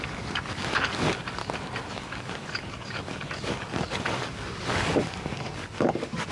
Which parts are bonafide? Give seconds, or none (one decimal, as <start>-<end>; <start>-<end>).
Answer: 1.4-1.9